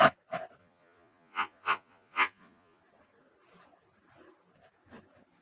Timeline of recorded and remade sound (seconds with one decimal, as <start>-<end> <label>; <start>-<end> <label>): 0.0-0.6 recorded; 0.6-2.8 remade; 2.8-5.4 recorded